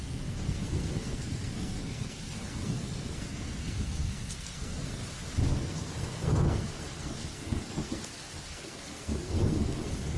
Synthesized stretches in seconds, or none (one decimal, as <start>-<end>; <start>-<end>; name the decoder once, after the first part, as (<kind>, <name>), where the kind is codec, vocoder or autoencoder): 0.0-5.0 (codec, SNAC); 5.5-10.2